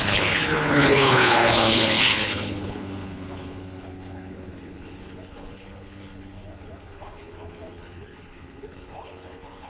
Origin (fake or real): fake